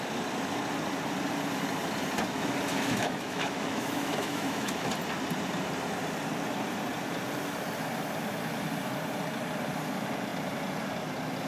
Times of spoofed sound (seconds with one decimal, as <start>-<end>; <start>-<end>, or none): 2.7-4.9